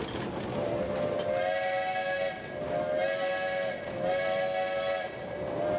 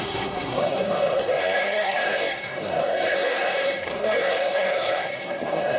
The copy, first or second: second